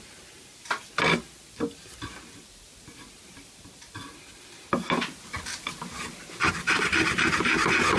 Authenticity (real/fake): real